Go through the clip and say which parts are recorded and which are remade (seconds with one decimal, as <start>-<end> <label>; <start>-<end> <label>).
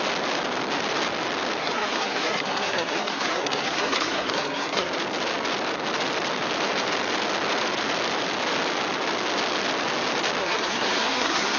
0.0-1.6 recorded; 1.6-4.9 remade; 4.9-10.4 recorded; 10.4-11.6 remade